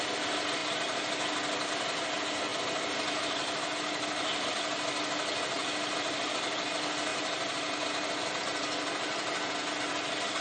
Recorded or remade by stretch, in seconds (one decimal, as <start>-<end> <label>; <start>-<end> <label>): 0.0-10.4 recorded

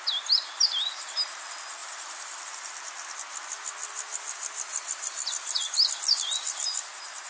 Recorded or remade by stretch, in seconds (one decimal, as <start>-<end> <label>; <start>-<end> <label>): 0.0-1.8 recorded; 1.8-2.4 remade; 2.4-4.7 recorded; 4.7-5.7 remade; 5.7-7.3 recorded

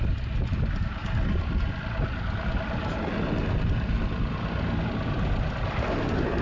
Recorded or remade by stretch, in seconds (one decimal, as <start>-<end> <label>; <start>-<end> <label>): 0.0-6.4 recorded

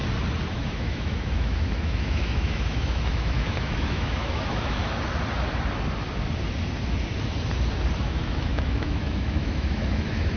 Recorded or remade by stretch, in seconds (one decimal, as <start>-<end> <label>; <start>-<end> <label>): 0.0-0.5 recorded; 0.5-4.8 remade; 4.8-8.0 recorded; 8.0-10.4 remade

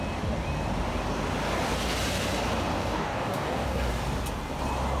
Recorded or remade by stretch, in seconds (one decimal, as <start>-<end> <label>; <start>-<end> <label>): 0.0-2.8 recorded; 2.8-3.9 remade; 3.9-5.0 recorded

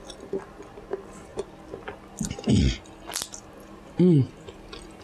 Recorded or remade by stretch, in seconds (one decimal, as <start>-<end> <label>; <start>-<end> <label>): 0.0-5.0 recorded

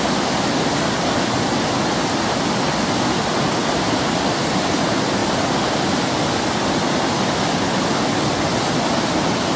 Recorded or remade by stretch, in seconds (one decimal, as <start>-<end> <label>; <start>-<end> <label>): 0.0-9.6 recorded

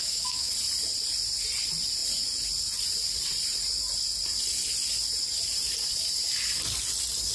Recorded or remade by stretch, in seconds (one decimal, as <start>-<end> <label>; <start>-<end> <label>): 0.0-0.5 remade; 0.5-7.3 recorded